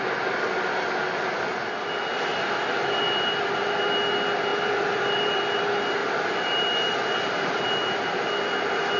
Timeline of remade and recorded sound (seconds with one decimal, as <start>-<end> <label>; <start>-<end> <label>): 0.0-4.5 recorded; 4.5-5.6 remade; 5.6-6.0 recorded; 6.0-7.5 remade; 7.5-9.0 recorded